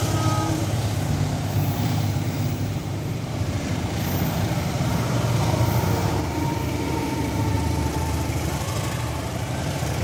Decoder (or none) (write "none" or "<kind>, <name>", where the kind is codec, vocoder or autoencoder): vocoder, BigVGAN v2